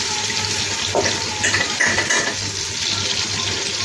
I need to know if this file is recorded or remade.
recorded